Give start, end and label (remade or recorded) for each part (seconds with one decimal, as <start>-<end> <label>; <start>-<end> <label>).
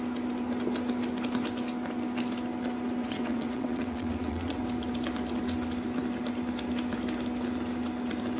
0.0-3.0 recorded; 3.0-4.6 remade; 4.6-8.4 recorded